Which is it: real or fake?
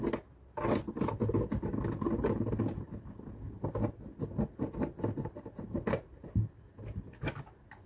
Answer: real